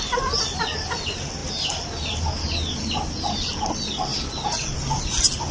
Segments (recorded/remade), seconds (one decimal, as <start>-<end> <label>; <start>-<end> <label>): 0.0-5.5 recorded